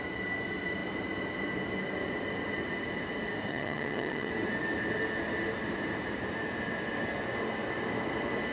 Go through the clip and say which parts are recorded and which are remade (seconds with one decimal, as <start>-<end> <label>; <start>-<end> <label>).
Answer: 0.0-3.5 recorded; 3.5-4.3 remade; 4.3-8.5 recorded